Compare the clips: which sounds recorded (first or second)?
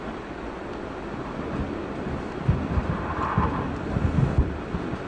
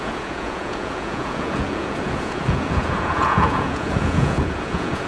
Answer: first